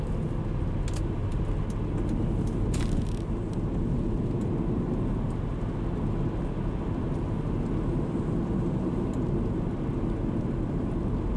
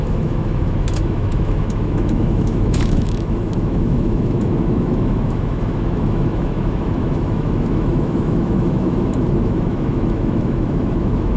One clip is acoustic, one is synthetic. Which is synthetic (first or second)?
second